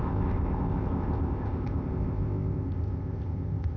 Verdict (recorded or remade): remade